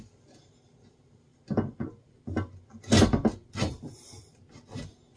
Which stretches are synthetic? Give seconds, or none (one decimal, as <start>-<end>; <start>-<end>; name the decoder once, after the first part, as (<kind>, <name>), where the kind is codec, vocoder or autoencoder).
none